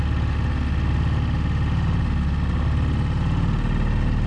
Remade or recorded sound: recorded